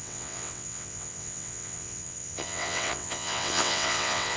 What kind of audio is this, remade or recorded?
remade